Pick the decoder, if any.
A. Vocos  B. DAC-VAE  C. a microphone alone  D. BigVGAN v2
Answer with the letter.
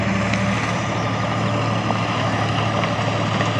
C